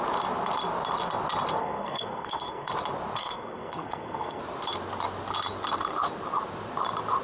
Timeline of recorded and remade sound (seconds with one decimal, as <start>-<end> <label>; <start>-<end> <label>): 0.0-1.6 recorded; 1.6-2.7 remade; 2.7-3.2 recorded; 3.2-4.4 remade; 4.4-7.2 recorded